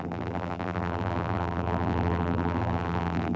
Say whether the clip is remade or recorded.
remade